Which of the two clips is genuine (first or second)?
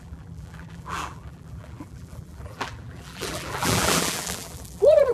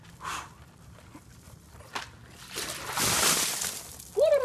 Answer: second